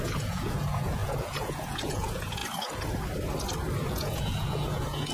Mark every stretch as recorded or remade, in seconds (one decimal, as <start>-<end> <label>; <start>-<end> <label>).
0.0-2.4 remade; 2.4-3.9 recorded; 3.9-5.1 remade